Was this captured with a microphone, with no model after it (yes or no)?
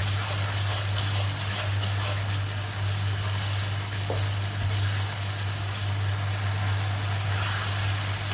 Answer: yes